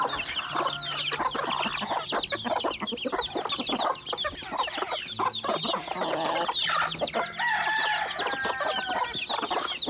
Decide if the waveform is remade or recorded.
recorded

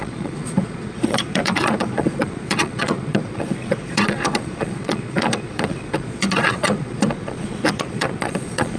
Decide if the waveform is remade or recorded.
remade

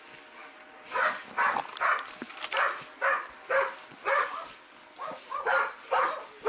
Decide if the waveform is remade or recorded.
recorded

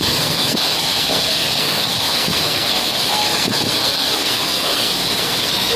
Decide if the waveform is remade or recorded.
remade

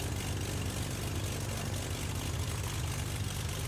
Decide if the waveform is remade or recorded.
recorded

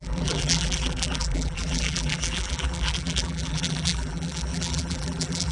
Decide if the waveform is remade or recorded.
remade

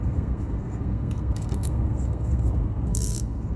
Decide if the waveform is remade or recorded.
remade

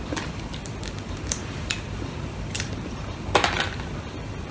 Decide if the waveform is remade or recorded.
remade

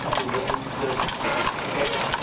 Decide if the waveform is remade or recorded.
recorded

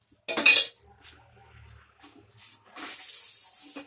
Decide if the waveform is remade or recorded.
recorded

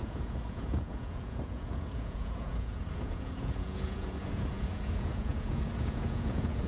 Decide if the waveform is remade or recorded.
remade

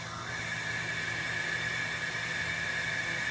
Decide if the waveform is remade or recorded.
recorded